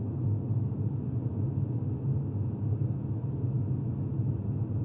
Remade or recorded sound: recorded